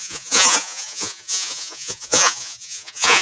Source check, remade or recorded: remade